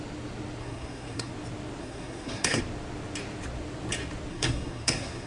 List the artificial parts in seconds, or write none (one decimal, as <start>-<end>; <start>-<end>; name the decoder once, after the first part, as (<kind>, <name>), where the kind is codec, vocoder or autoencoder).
0.6-1.3 (codec, SNAC); 1.8-2.6; 4.3-5.3